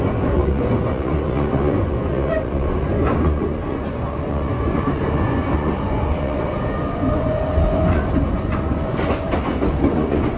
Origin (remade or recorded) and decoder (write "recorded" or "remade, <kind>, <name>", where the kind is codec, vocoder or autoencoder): remade, vocoder, Vocos